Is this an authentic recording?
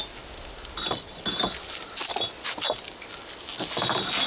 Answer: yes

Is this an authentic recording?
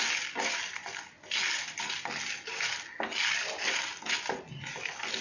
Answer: yes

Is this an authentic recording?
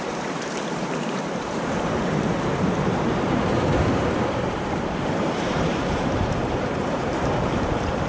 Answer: no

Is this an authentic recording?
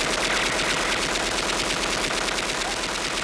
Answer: yes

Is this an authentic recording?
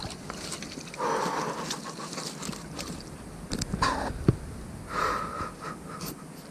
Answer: yes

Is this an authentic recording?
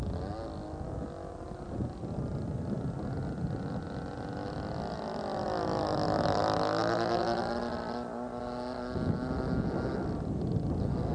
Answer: yes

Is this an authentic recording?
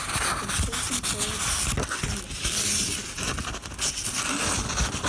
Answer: yes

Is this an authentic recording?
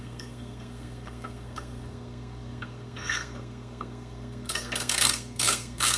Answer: no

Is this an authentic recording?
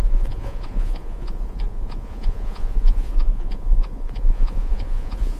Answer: no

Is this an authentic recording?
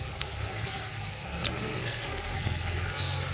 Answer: no